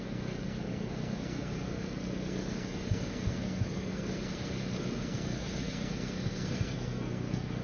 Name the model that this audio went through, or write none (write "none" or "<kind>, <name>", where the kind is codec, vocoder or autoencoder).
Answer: codec, SNAC